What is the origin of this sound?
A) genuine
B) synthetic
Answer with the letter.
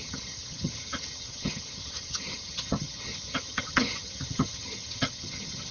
B